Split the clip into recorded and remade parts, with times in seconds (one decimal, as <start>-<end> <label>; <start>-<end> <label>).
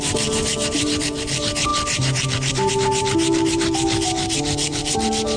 0.0-5.4 remade